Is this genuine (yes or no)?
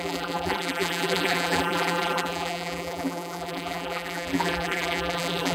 no